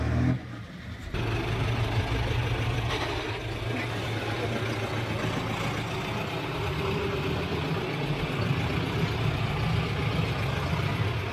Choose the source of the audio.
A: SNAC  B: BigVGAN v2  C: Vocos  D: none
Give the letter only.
D